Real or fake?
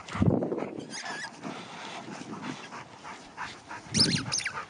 real